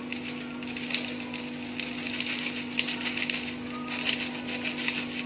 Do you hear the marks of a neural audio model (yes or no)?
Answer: no